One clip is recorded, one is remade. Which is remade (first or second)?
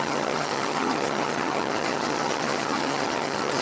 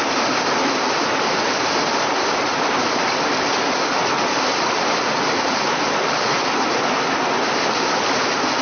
first